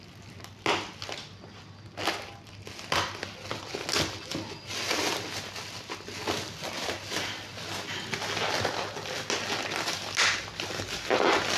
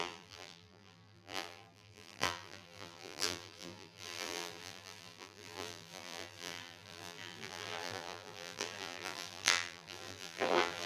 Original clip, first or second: first